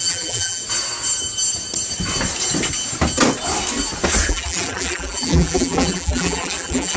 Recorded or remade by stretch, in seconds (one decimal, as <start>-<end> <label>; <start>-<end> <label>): 0.0-0.6 remade; 0.6-4.3 recorded; 4.3-7.0 remade